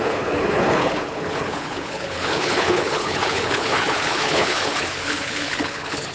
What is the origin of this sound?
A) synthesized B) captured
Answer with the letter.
A